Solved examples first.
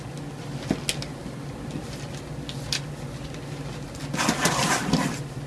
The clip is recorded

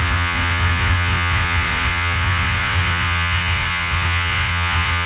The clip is remade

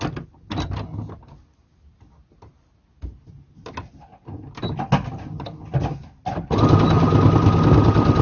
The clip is recorded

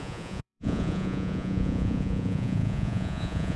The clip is remade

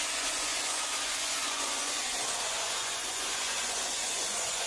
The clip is remade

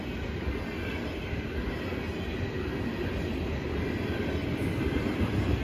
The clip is recorded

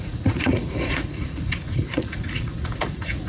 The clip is remade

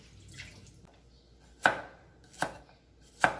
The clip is recorded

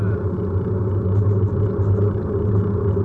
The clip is recorded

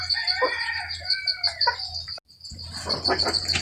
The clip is recorded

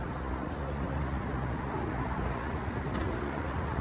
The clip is remade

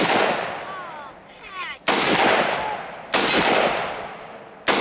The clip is recorded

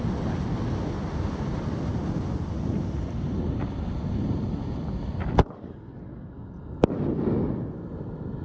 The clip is recorded